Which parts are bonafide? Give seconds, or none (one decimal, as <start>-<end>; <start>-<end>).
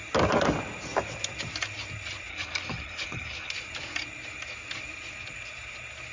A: 0.0-2.3; 3.5-6.1